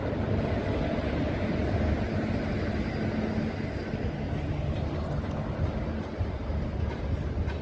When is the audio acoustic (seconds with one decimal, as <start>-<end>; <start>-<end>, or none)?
0.0-7.6